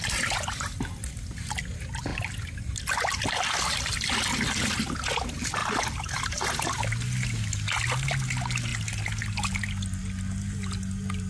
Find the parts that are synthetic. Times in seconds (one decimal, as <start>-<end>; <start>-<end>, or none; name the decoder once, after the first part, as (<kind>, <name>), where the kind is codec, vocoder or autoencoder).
2.1-4.5 (vocoder, BigVGAN v2); 5.6-6.2

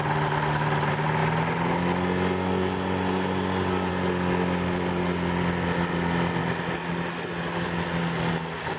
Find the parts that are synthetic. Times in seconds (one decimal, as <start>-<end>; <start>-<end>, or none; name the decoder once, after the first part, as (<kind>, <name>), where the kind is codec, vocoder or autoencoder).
none

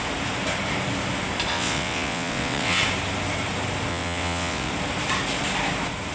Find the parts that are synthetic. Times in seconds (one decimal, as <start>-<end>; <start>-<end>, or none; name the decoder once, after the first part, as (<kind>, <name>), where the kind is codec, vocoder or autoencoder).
1.5-2.8 (vocoder, WaveNeXt); 3.9-4.7